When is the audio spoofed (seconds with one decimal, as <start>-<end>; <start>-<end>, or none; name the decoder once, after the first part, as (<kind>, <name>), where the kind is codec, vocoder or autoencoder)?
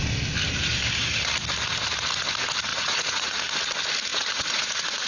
2.7-3.4 (vocoder, Vocos); 4.1-5.1